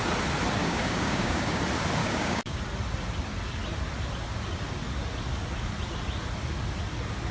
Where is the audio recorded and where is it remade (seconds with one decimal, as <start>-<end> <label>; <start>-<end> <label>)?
0.0-0.6 recorded; 0.6-1.6 remade; 1.6-2.0 recorded; 2.0-2.6 remade; 2.6-7.3 recorded